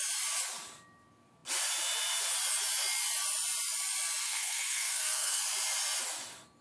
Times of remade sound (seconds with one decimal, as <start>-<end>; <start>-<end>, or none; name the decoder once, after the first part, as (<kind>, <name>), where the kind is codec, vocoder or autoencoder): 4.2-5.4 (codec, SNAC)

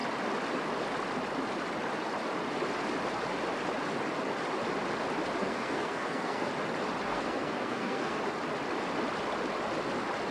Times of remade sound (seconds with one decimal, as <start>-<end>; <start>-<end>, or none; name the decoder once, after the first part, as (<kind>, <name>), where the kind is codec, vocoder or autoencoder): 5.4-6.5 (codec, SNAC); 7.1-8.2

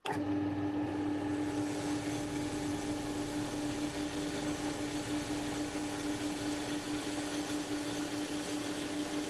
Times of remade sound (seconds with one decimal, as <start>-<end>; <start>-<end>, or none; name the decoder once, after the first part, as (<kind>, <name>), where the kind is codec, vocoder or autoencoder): none